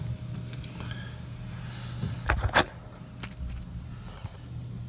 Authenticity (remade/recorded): recorded